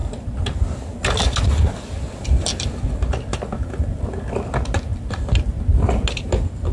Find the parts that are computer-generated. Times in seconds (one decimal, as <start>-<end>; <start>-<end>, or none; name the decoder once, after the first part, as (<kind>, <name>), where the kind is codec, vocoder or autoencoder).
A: none